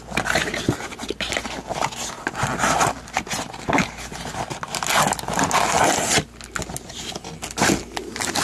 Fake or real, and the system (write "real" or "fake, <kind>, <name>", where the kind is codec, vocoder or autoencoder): real